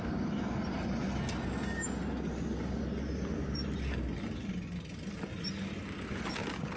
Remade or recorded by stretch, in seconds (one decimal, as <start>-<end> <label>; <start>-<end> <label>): 0.0-6.8 recorded